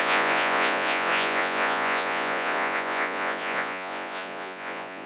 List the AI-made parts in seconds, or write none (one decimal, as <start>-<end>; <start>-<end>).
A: 0.0-5.1

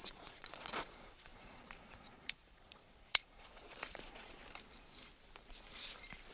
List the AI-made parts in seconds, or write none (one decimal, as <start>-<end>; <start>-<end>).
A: 0.0-4.4